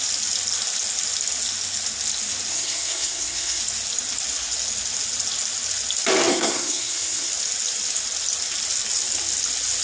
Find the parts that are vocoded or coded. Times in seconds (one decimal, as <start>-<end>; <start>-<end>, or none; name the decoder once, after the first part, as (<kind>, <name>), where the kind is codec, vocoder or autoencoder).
2.5-3.6 (codec, SNAC); 6.3-7.3